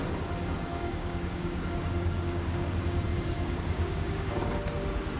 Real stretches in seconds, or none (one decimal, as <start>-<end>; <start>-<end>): 0.0-0.7; 2.7-3.1; 4.4-5.2